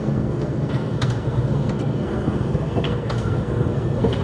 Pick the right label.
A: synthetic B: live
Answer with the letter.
A